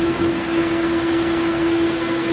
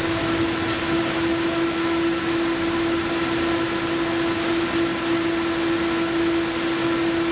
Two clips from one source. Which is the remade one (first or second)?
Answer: first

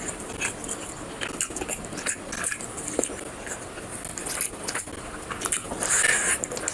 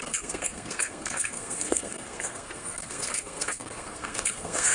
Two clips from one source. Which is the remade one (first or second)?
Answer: second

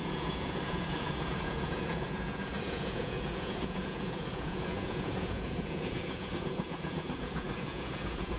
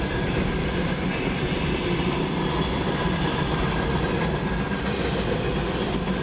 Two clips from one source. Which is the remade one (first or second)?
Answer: first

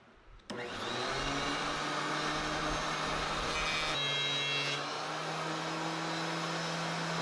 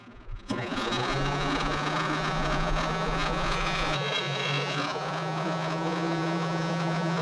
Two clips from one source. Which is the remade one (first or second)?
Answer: second